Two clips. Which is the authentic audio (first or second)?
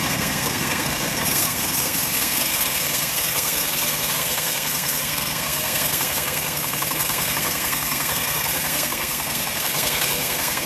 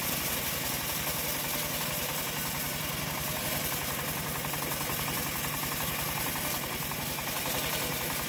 second